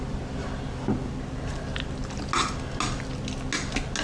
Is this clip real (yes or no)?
yes